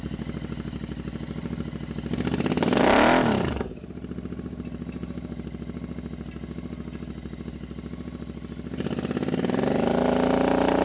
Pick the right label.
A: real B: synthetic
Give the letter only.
A